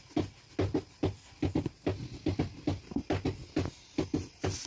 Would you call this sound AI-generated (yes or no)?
no